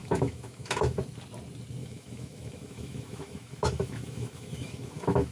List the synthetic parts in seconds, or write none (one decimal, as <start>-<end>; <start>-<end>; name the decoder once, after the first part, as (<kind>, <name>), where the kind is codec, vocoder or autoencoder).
0.0-1.0 (autoencoder, DAC-VAE); 1.8-5.3

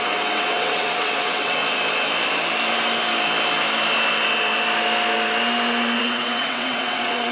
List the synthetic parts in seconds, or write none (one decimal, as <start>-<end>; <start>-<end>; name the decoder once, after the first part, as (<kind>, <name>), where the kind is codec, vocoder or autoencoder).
0.0-1.6 (vocoder, WaveNeXt); 6.0-7.3